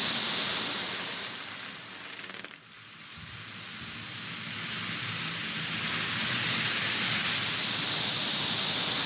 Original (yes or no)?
yes